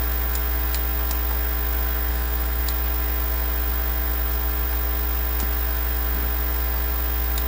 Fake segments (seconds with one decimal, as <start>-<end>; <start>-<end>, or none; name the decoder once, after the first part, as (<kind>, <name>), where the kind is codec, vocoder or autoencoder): 2.1-2.6 (autoencoder, DAC-VAE)